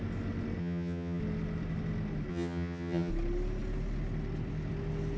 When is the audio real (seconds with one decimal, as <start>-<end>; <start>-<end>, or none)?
0.0-0.6; 1.2-2.3; 3.1-5.2